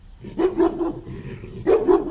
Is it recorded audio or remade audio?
recorded